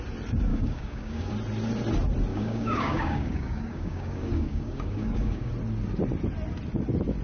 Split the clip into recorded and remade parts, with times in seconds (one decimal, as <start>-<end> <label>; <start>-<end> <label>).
0.0-0.5 recorded; 0.5-1.3 remade; 1.3-2.3 recorded; 2.3-5.5 remade; 5.5-7.2 recorded

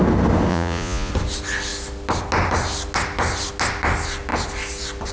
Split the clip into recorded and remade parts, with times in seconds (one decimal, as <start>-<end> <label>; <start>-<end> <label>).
0.0-0.5 recorded; 0.5-1.1 remade; 1.1-5.1 recorded

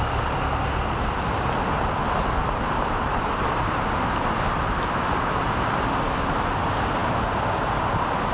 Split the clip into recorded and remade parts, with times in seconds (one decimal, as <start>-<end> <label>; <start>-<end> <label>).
0.0-2.4 recorded; 2.4-3.2 remade; 3.2-8.3 recorded

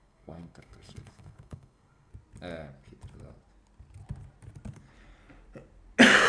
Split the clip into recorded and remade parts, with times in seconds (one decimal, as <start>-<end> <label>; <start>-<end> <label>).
0.0-2.1 remade; 2.1-6.3 recorded

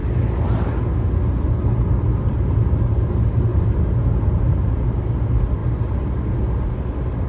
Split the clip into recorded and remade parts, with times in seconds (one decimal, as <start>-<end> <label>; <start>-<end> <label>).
0.0-3.5 recorded; 3.5-5.0 remade; 5.0-7.3 recorded

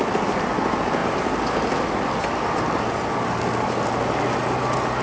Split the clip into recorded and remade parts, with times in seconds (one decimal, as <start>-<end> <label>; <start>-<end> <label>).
0.0-5.0 recorded

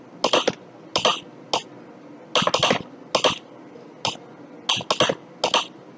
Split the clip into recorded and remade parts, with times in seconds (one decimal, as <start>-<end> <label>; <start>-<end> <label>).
0.0-6.0 recorded